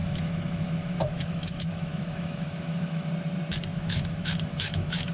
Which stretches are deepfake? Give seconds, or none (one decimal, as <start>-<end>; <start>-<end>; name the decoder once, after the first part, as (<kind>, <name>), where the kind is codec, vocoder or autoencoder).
0.0-3.1 (autoencoder, DAC-VAE); 3.7-5.1